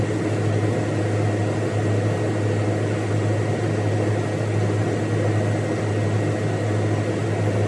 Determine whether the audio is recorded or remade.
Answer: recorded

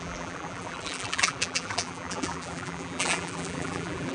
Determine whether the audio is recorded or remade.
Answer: remade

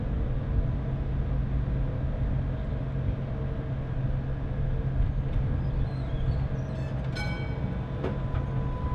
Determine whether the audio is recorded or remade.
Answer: recorded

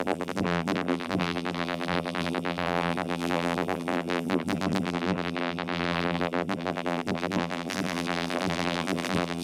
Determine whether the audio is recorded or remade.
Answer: remade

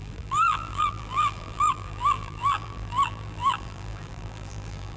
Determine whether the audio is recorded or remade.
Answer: remade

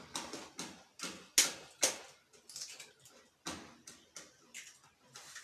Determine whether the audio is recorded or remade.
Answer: recorded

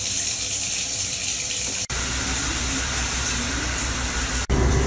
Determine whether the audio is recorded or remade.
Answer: remade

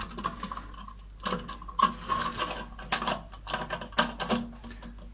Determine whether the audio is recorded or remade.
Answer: recorded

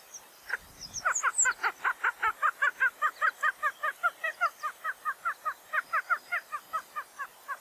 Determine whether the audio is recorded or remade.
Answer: recorded